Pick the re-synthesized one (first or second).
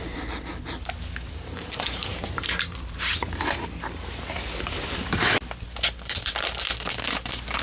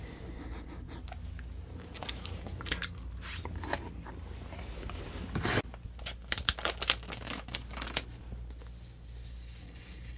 first